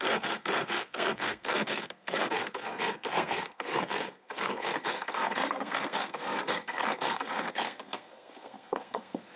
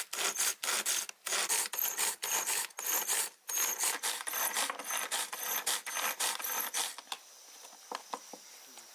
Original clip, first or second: second